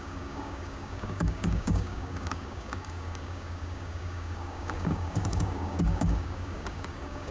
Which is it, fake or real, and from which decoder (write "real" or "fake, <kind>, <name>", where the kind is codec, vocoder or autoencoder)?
fake, codec, DAC